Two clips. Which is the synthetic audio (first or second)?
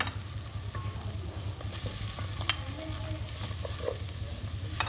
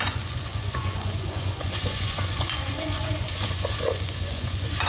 second